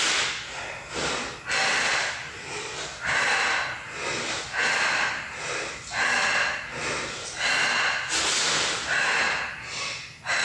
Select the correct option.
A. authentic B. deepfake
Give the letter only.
A